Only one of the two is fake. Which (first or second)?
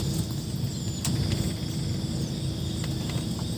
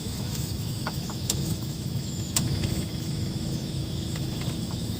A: second